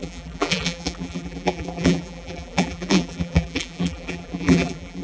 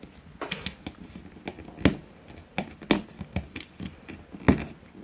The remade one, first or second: first